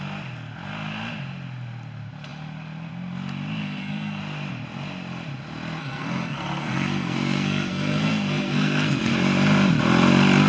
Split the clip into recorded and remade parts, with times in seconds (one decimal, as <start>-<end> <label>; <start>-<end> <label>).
0.0-3.6 recorded; 3.6-4.2 remade; 4.2-5.8 recorded; 5.8-9.1 remade; 9.1-10.5 recorded